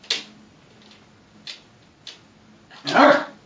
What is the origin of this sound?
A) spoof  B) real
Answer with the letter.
B